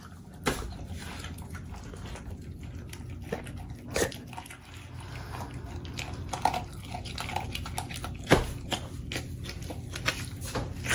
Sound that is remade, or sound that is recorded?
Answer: recorded